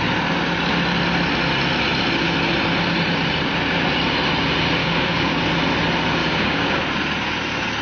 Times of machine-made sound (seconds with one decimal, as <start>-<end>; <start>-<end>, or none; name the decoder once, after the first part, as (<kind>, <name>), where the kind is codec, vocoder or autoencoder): 4.8-5.4 (codec, DAC); 6.2-6.8